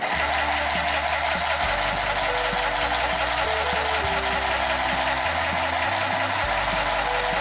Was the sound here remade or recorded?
recorded